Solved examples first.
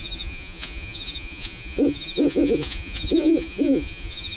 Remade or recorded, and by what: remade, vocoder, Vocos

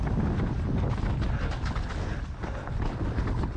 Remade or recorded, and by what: recorded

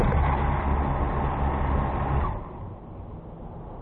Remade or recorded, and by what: recorded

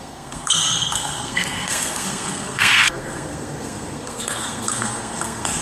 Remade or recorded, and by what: remade, codec, SNAC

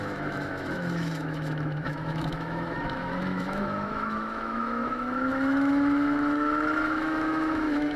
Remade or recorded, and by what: remade, autoencoder, DAC-VAE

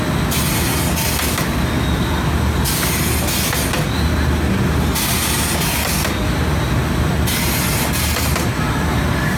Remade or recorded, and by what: recorded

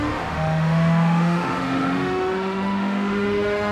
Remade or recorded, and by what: remade, autoencoder, DAC-VAE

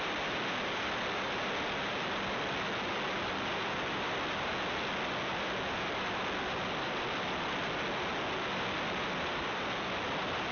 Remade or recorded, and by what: recorded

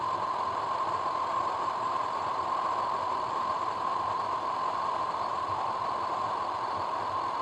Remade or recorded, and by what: recorded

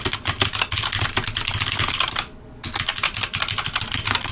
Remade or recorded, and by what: recorded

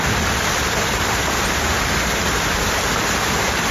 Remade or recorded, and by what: recorded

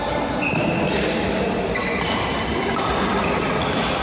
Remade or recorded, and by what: remade, vocoder, BigVGAN v2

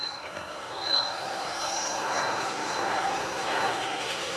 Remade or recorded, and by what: remade, codec, SNAC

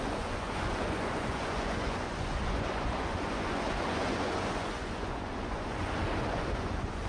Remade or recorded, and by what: remade, vocoder, Vocos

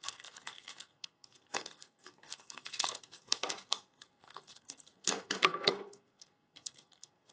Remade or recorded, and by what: remade, codec, SNAC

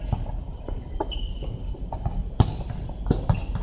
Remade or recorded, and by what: recorded